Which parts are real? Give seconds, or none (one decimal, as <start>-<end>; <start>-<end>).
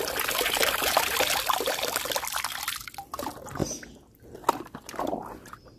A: 0.0-0.6; 2.7-5.8